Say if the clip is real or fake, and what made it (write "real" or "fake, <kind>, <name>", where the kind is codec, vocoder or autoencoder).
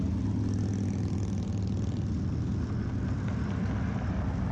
real